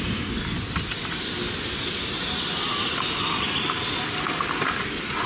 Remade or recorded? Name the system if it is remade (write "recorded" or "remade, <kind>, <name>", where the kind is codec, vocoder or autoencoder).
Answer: recorded